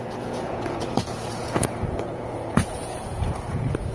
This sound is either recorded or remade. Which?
remade